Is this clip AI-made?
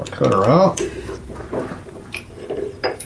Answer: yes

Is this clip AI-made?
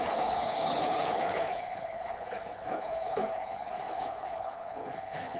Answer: yes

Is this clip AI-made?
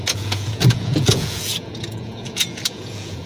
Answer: yes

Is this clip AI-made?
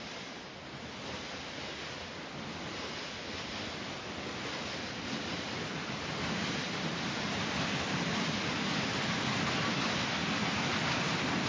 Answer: no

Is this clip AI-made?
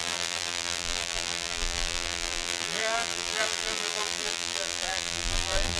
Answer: yes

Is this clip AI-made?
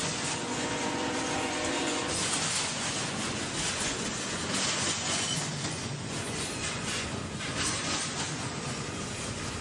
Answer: yes